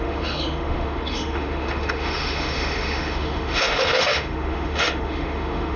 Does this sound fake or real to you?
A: fake